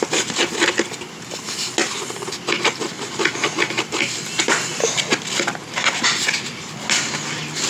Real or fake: real